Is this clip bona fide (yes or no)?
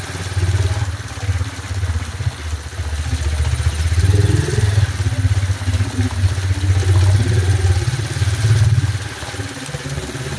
yes